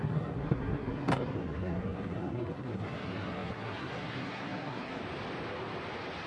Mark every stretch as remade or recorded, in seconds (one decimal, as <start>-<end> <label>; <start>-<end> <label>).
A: 0.0-5.0 remade; 5.0-6.3 recorded